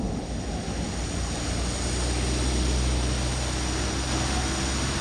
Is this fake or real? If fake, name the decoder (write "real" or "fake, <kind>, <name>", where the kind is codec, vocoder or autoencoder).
real